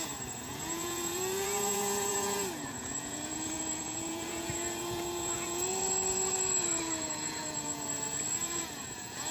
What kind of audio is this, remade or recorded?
remade